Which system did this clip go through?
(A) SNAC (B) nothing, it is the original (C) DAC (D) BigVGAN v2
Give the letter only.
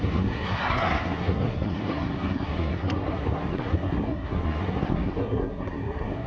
A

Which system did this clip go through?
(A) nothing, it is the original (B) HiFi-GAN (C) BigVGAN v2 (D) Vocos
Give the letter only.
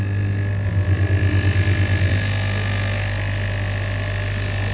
A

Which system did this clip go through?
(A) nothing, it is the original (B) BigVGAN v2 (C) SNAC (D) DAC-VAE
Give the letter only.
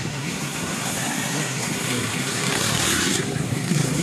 C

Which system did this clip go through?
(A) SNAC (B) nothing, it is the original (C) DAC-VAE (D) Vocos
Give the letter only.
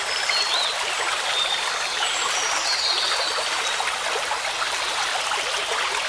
B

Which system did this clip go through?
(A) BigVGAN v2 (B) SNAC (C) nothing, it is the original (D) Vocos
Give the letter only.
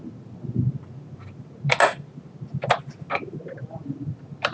C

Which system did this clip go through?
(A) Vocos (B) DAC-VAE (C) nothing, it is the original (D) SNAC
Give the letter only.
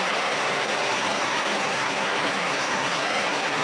D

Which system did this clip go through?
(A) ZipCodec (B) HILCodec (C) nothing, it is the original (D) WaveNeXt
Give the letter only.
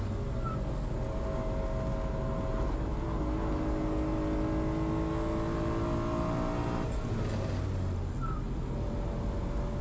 C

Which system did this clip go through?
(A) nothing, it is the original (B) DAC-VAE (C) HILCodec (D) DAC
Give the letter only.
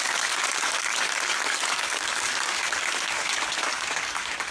D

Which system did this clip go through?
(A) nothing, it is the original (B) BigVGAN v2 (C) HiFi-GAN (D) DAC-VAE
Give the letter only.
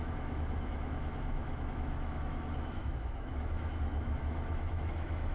D